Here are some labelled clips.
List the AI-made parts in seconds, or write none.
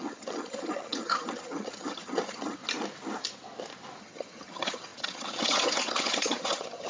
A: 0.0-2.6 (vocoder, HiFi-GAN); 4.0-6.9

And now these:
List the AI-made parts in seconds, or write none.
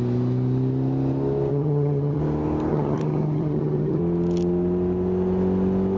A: 1.5-2.2 (vocoder, HiFi-GAN); 2.7-4.0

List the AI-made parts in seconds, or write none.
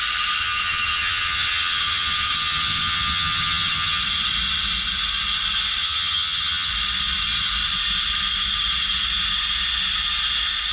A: 0.4-4.0 (vocoder, HiFi-GAN); 5.8-6.7